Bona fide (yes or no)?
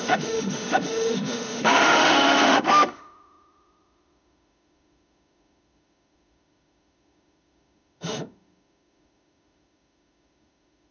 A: no